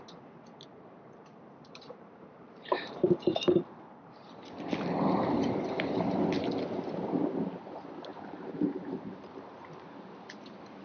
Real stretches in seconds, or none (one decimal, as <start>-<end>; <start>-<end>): 0.0-0.7; 4.4-8.1; 9.6-10.8